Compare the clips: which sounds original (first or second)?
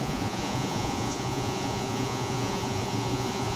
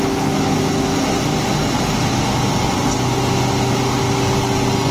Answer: second